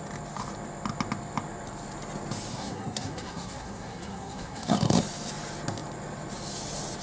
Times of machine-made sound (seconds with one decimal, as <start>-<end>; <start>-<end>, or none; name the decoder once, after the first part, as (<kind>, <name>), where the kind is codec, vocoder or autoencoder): 2.5-5.0 (codec, SNAC)